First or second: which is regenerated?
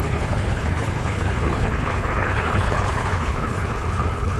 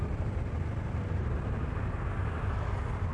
first